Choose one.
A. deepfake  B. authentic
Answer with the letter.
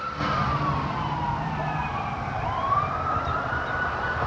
A